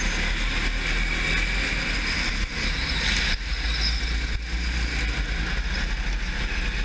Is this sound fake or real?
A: real